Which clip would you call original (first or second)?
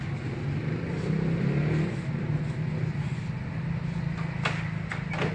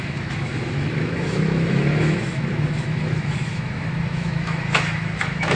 first